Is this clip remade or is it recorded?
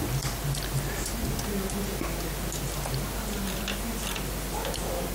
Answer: recorded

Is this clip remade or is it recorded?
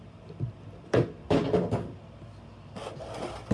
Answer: recorded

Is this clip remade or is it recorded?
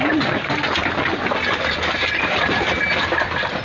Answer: recorded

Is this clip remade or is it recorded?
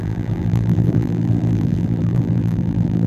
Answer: remade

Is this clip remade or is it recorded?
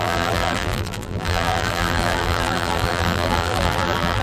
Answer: remade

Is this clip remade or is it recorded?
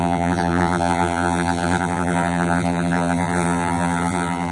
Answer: remade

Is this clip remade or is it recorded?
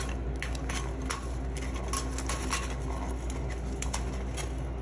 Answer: recorded